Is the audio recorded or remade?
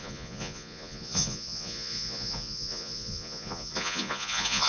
remade